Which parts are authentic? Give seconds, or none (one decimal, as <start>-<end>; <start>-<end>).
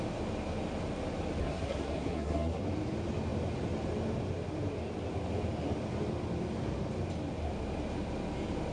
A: 0.0-1.4; 2.6-8.7